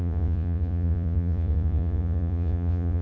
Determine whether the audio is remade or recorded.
remade